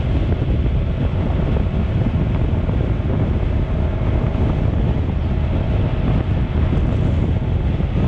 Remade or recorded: recorded